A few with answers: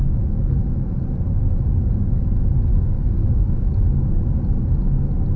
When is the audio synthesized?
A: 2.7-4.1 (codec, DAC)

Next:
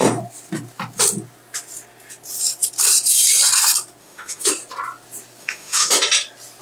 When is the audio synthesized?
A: 4.0-4.5 (autoencoder, DAC-VAE); 5.4-5.9

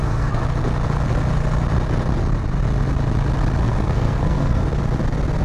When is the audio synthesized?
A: 0.0-0.4 (codec, SNAC); 3.6-4.6

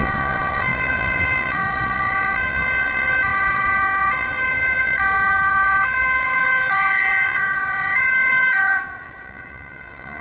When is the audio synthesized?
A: 0.0-10.2 (vocoder, WaveNeXt)

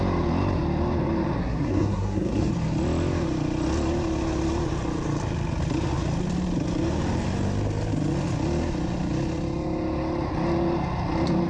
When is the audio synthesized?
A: 1.4-2.5 (codec, SNAC)

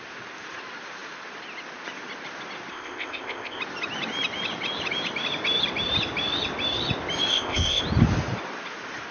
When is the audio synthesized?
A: 2.7-3.6 (codec, ZipCodec); 7.3-7.8